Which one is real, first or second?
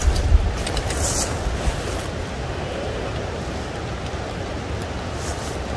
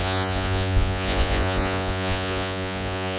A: first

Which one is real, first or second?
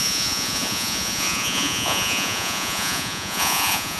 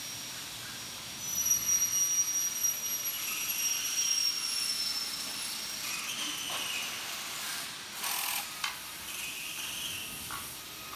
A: second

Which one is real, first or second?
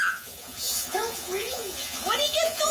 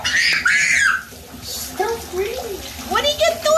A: second